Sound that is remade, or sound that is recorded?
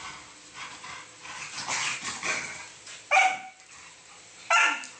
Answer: recorded